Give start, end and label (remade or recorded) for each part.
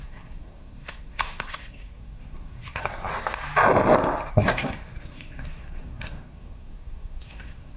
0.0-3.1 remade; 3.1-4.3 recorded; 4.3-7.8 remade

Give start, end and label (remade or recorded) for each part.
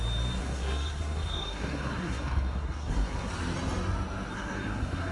0.0-0.4 recorded; 0.4-3.3 remade; 3.3-4.3 recorded; 4.3-5.1 remade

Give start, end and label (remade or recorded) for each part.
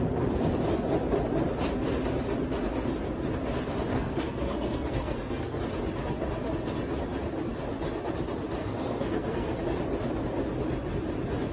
0.0-3.9 recorded; 3.9-5.6 remade; 5.6-8.6 recorded; 8.6-9.6 remade; 9.6-11.5 recorded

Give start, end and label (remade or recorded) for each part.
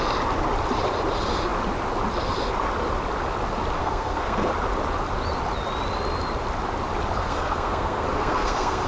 0.0-3.8 recorded; 3.8-4.5 remade; 4.5-7.2 recorded; 7.2-8.9 remade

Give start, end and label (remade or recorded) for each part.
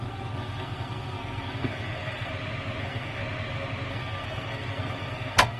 0.0-2.3 remade; 2.3-2.8 recorded; 2.8-3.2 remade; 3.2-3.9 recorded; 3.9-5.6 remade